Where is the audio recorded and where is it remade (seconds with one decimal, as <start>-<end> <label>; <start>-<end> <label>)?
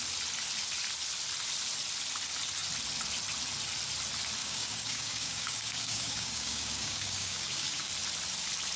0.0-4.4 recorded; 4.4-7.9 remade; 7.9-8.8 recorded